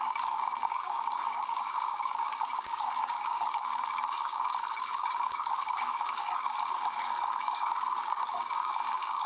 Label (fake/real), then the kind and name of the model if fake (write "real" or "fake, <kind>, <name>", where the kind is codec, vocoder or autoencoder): fake, codec, DAC